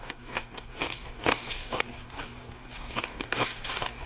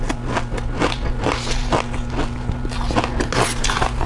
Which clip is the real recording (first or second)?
second